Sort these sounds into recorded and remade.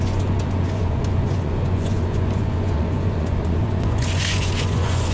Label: remade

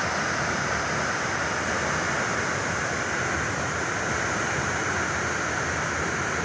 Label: recorded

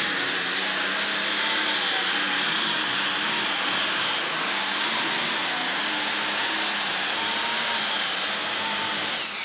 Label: recorded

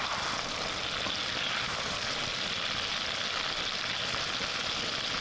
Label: recorded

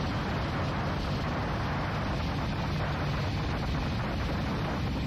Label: recorded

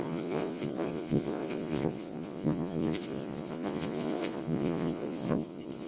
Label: remade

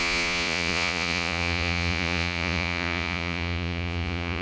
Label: remade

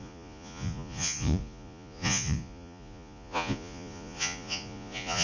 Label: remade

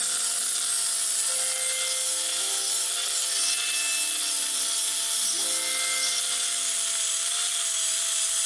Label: recorded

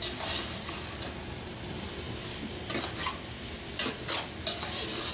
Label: recorded